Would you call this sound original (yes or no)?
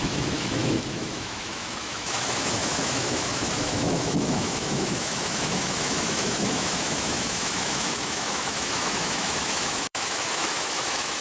no